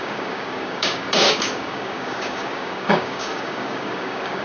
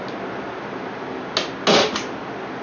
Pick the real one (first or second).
second